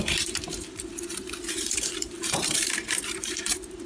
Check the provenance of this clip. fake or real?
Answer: fake